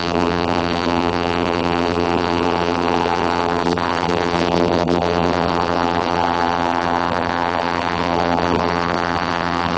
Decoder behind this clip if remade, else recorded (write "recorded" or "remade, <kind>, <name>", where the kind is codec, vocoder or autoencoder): remade, vocoder, BigVGAN v2